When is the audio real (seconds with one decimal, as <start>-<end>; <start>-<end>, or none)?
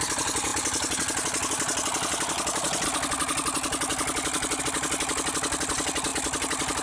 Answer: 0.0-6.8